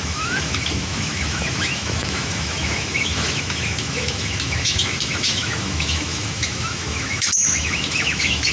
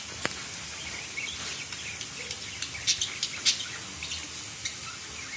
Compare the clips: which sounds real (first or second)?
second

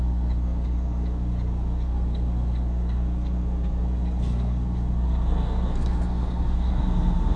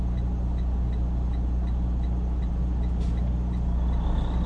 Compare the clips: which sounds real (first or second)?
second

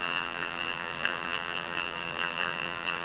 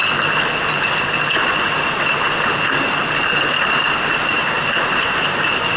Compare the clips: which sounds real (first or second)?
second